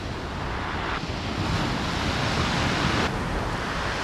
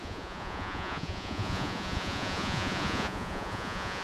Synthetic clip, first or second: second